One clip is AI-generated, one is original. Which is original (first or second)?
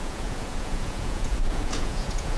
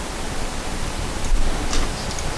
second